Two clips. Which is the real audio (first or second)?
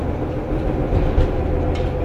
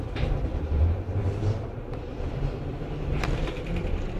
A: first